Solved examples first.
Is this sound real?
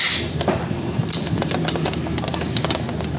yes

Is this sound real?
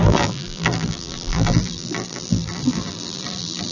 no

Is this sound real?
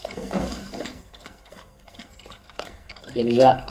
no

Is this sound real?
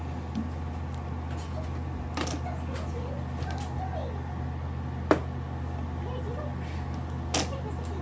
yes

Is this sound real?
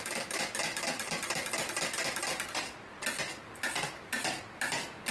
yes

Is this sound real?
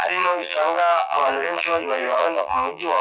no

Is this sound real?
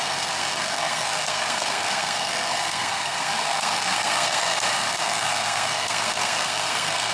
no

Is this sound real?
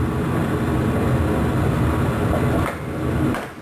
yes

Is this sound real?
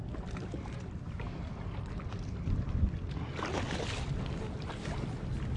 no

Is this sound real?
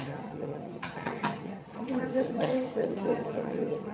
no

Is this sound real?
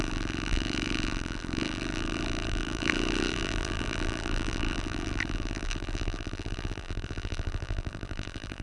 no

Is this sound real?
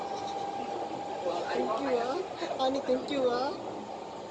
yes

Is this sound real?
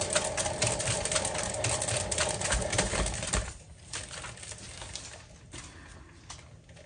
yes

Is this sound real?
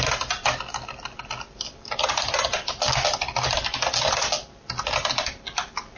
yes